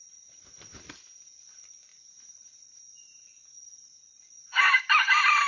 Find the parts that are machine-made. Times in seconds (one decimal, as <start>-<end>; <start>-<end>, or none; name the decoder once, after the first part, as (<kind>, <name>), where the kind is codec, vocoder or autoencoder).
0.0-5.5 (vocoder, BigVGAN v2)